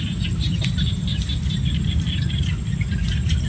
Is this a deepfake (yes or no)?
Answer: no